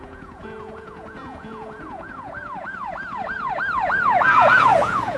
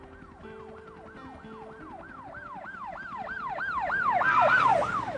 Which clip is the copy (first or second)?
first